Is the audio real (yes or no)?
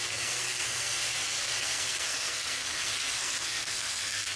no